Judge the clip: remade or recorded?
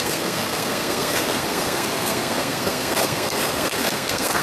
remade